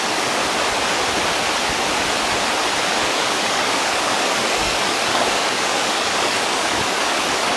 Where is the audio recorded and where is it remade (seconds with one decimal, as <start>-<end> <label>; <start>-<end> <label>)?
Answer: 0.0-0.4 remade; 0.4-2.8 recorded; 2.8-7.6 remade